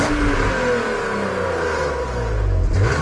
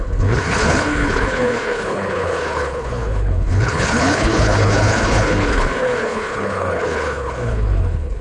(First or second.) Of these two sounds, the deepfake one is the second